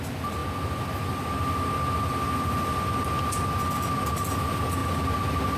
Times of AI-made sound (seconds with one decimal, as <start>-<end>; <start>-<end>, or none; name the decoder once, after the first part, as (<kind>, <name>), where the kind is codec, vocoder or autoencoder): none